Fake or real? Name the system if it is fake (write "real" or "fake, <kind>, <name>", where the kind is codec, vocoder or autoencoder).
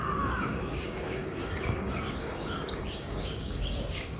fake, codec, DAC